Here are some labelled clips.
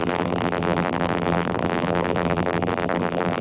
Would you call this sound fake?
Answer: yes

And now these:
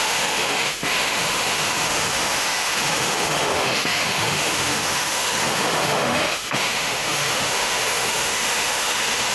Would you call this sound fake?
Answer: yes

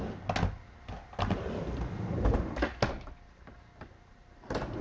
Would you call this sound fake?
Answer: no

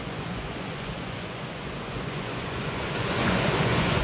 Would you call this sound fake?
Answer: yes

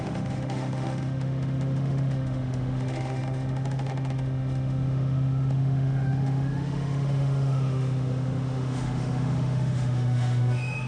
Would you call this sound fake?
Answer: yes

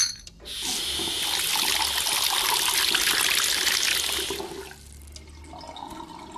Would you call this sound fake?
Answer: no